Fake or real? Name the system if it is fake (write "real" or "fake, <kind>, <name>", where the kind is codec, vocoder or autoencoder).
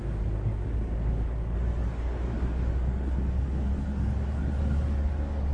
fake, codec, DAC